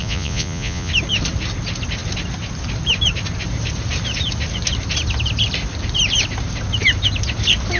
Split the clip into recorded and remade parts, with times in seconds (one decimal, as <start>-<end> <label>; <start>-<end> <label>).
0.0-0.9 remade; 0.9-7.8 recorded